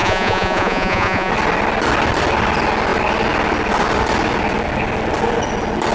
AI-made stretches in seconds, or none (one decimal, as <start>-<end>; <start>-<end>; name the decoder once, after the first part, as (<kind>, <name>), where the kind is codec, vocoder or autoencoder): 0.0-1.3 (vocoder, Vocos)